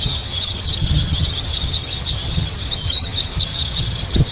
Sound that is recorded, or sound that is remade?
remade